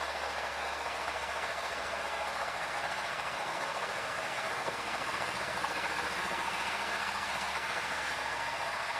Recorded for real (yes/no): no